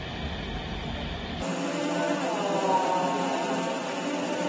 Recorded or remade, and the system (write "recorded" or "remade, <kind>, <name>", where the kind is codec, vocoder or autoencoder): recorded